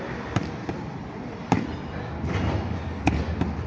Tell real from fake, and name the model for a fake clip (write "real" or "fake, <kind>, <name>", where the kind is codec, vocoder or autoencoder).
real